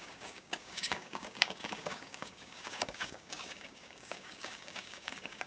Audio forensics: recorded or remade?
remade